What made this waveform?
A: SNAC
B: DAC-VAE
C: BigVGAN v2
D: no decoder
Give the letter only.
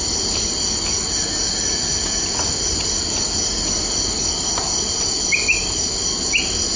D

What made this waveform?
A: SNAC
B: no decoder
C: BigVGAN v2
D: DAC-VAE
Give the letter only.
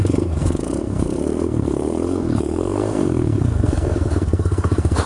A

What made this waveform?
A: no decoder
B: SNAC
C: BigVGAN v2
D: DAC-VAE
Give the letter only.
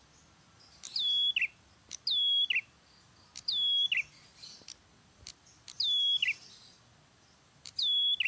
A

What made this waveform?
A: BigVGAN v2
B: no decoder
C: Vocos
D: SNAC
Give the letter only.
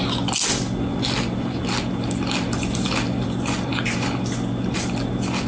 B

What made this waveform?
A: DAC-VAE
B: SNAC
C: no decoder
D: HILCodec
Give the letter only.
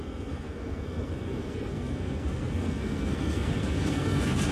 B